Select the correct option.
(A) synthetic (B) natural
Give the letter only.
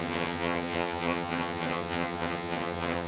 A